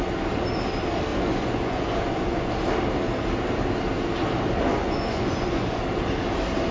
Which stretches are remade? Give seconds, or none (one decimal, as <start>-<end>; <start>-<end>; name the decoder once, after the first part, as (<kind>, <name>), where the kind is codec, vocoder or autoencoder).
1.1-2.5 (vocoder, Vocos); 4.7-5.8